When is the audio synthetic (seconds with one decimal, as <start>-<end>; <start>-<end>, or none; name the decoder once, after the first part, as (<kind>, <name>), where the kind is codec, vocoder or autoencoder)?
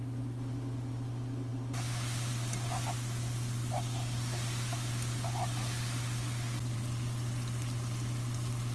none